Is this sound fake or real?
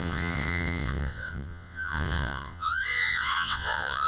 fake